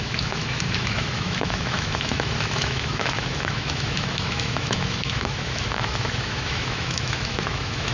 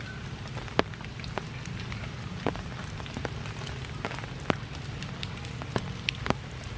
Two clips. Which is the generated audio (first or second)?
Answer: first